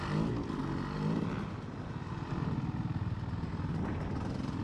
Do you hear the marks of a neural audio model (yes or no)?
no